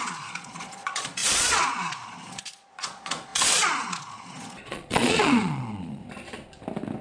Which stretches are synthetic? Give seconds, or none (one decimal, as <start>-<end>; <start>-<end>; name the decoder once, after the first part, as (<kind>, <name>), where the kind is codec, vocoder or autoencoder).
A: 0.0-6.0 (vocoder, Vocos)